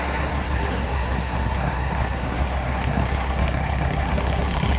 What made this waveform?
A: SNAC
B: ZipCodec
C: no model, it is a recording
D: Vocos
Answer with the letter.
A